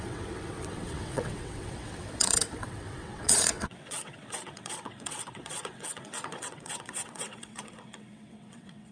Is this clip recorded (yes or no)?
no